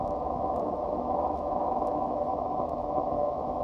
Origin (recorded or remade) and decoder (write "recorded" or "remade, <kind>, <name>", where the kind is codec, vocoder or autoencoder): remade, autoencoder, DAC-VAE